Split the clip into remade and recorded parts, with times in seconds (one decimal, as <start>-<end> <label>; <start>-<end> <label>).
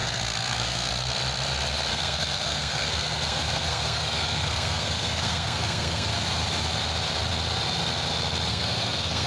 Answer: 0.0-0.9 remade; 0.9-1.9 recorded; 1.9-6.1 remade; 6.1-8.5 recorded; 8.5-9.3 remade